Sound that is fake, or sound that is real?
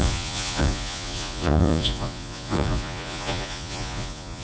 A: fake